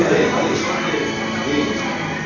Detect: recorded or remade recorded